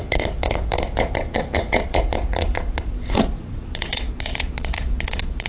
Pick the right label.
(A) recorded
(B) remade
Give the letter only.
B